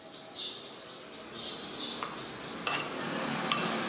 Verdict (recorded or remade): recorded